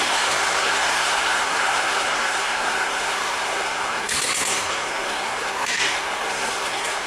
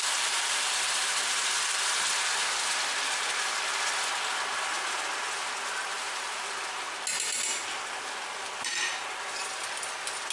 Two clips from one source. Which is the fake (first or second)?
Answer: first